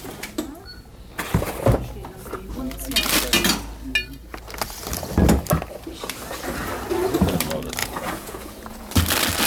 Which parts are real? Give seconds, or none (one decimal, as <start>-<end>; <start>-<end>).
0.0-7.8; 8.9-9.5